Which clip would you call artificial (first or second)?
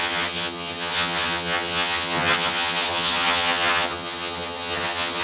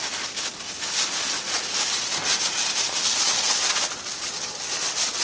first